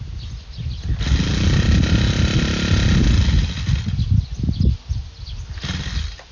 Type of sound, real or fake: real